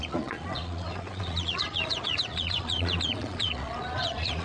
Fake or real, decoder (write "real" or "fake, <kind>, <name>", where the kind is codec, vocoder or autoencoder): fake, vocoder, Vocos